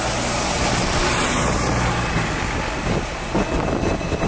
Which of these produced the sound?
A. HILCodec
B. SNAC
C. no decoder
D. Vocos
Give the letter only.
C